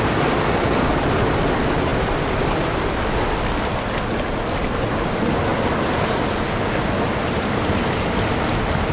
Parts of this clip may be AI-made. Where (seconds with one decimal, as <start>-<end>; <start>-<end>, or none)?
none